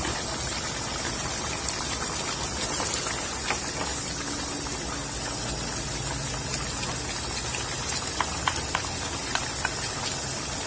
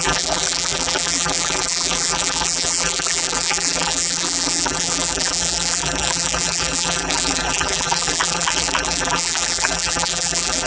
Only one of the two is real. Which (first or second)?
first